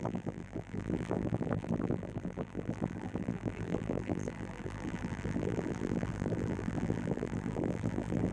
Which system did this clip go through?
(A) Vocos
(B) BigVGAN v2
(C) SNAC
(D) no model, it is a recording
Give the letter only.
B